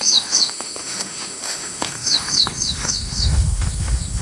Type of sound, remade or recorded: remade